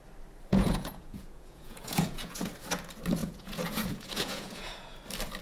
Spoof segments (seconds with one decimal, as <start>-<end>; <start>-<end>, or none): 0.5-2.5; 3.2-5.0